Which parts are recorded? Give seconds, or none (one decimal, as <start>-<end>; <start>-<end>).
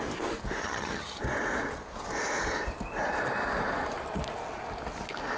0.0-0.6; 1.2-5.4